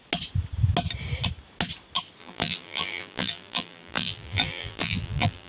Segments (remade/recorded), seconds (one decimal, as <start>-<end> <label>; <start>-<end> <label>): 0.0-2.2 recorded; 2.2-5.5 remade